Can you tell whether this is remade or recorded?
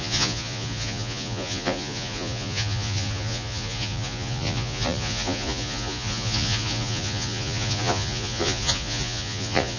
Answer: remade